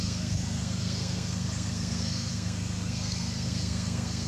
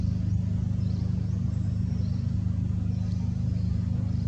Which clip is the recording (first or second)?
second